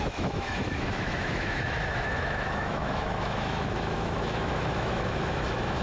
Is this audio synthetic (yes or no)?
yes